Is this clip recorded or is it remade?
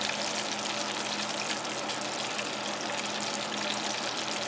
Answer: recorded